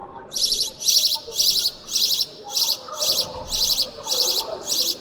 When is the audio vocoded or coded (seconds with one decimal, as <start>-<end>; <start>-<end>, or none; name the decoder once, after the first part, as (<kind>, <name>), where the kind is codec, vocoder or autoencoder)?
none